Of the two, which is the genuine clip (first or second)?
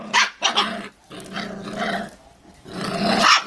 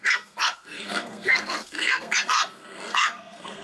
first